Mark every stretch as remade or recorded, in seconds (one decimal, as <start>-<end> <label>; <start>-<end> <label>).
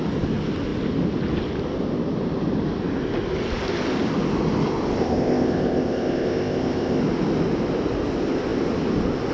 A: 0.0-5.0 recorded; 5.0-7.0 remade; 7.0-9.3 recorded